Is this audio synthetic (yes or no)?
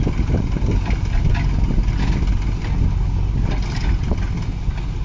no